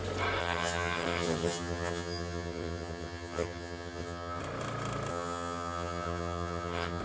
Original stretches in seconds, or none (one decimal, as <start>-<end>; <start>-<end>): 0.0-0.4; 4.4-5.1